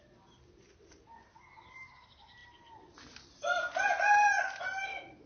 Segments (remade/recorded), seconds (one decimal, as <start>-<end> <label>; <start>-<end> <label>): 0.0-5.3 recorded